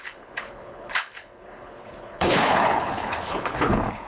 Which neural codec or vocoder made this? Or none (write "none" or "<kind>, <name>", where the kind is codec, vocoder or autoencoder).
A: codec, HILCodec